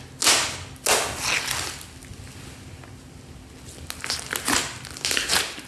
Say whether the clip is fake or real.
real